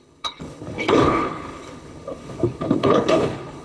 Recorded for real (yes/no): no